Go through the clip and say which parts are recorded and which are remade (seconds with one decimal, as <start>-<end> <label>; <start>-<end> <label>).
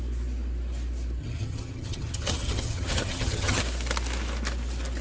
0.0-1.2 recorded; 1.2-3.6 remade; 3.6-5.0 recorded